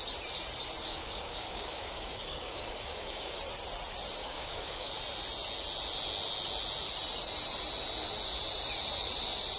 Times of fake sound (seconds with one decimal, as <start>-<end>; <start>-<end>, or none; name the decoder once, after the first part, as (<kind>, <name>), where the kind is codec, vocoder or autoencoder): 0.9-3.4 (codec, DAC); 4.2-4.9